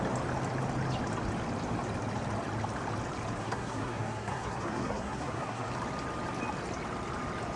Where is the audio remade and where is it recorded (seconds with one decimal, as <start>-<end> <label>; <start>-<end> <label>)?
0.0-3.4 recorded; 3.4-5.7 remade; 5.7-7.6 recorded